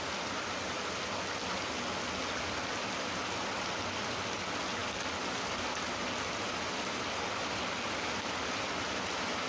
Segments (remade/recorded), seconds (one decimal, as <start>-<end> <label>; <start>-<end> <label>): 0.0-9.5 recorded